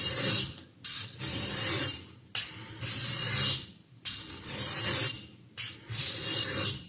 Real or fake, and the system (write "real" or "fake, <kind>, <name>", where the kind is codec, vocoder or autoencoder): real